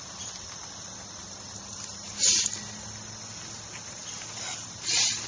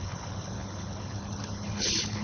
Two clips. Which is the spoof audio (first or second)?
second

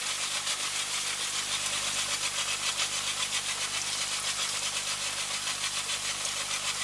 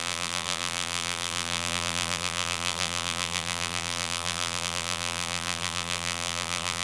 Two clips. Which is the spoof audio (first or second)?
second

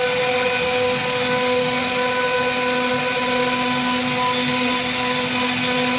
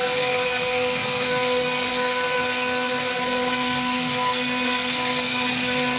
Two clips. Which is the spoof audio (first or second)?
second